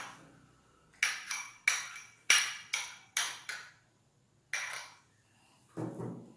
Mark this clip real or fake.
real